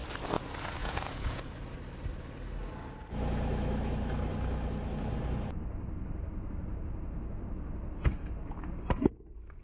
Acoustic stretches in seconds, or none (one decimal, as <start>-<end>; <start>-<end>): 0.0-0.8; 1.4-9.6